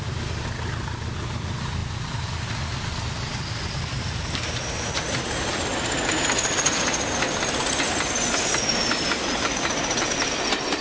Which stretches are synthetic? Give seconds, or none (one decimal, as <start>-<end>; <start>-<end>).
none